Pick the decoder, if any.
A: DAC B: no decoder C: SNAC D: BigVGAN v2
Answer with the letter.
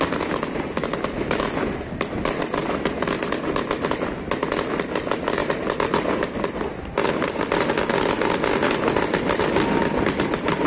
B